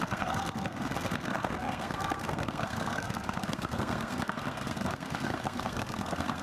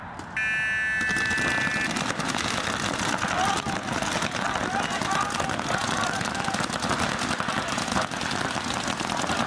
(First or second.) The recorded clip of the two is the second